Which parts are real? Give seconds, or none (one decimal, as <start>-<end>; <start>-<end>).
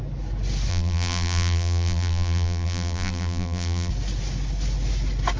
0.0-0.7; 3.9-5.4